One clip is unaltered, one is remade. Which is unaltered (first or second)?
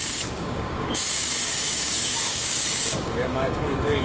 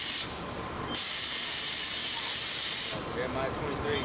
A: second